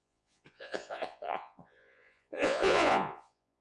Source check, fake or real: fake